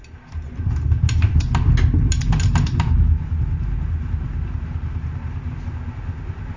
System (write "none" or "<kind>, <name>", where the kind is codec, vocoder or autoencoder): none